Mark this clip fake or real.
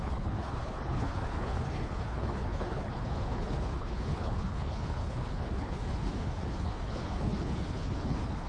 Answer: fake